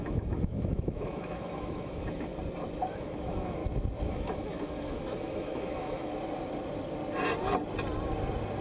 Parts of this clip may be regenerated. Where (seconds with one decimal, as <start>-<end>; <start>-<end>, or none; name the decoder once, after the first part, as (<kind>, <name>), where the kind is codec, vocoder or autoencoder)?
0.0-2.3 (autoencoder, DAC-VAE); 2.9-3.6; 4.1-6.1